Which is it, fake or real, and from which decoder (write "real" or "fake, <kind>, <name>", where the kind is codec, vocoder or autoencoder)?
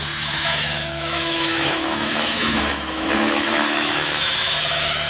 fake, autoencoder, DAC-VAE